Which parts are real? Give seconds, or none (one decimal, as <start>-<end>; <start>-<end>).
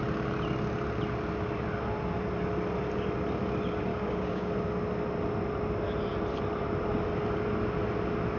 0.0-3.9; 4.5-8.4